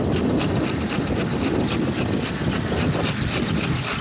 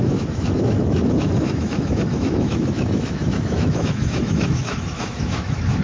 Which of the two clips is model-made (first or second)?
second